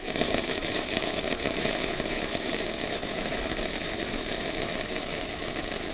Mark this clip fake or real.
fake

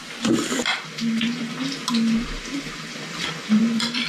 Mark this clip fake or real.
fake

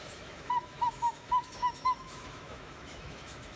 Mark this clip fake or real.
fake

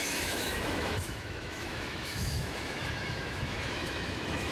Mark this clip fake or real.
fake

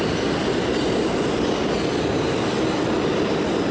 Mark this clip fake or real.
real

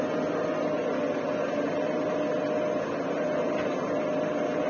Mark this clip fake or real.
real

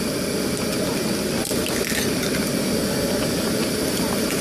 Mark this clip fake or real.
real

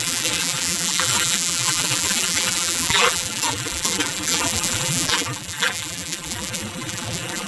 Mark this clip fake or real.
fake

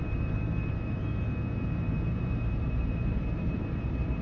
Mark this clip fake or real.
fake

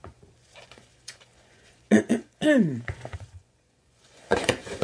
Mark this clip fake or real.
fake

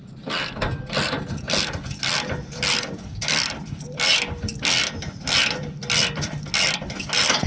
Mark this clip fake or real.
real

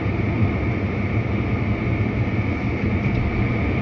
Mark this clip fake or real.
real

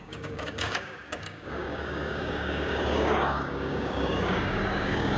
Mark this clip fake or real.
fake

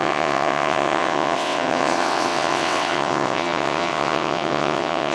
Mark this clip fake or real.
fake